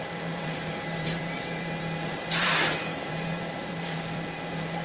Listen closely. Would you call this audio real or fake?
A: fake